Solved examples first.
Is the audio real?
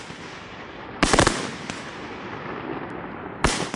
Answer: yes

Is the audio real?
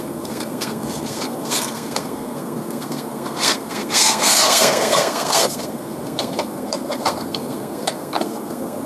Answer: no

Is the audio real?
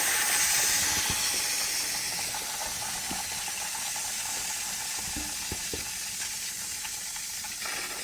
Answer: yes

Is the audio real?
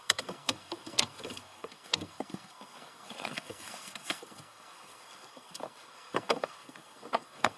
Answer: no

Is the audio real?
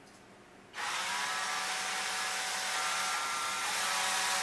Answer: yes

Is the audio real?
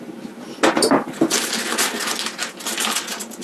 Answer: yes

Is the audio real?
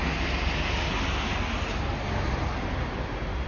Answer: yes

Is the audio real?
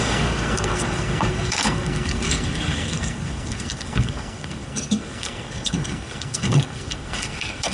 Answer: no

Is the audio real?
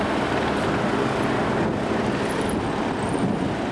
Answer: yes